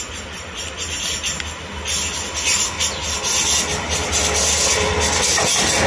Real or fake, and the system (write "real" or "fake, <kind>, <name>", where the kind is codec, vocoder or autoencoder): real